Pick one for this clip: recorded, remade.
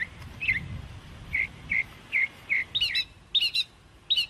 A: recorded